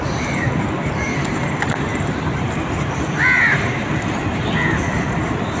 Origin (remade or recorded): recorded